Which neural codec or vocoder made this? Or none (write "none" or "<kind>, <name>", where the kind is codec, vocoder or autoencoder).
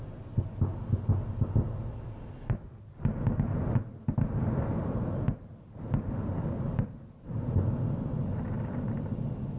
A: none